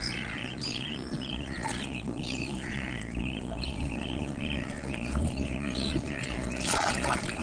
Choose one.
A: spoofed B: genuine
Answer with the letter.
A